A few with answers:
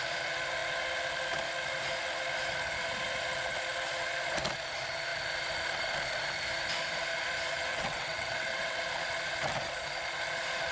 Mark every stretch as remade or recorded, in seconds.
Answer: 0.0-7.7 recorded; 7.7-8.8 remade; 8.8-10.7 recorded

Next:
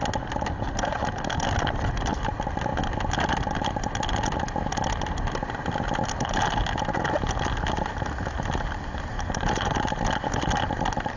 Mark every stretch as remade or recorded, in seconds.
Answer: 0.0-9.1 recorded; 9.1-10.0 remade; 10.0-11.2 recorded

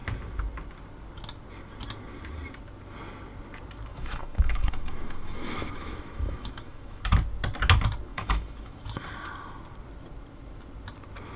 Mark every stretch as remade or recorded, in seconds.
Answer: 0.0-3.9 recorded; 3.9-7.0 remade; 7.0-8.1 recorded; 8.1-8.8 remade; 8.8-11.4 recorded

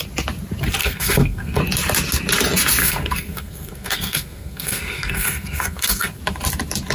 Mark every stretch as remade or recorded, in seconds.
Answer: 0.0-0.8 recorded; 0.8-1.6 remade; 1.6-2.8 recorded; 2.8-6.2 remade; 6.2-6.9 recorded

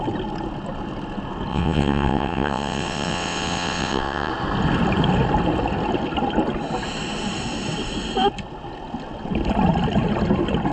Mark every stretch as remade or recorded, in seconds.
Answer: 0.0-1.5 recorded; 1.5-4.3 remade; 4.3-10.7 recorded

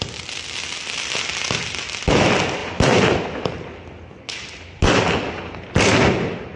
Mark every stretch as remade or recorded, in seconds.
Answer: 0.0-6.6 recorded